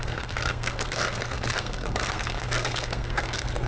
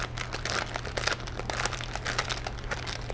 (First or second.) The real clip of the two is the second